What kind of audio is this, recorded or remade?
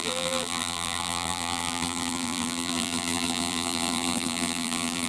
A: remade